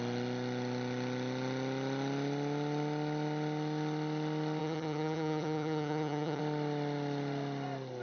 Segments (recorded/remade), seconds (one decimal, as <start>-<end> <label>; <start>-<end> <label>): 0.0-4.6 recorded; 4.6-6.4 remade; 6.4-8.0 recorded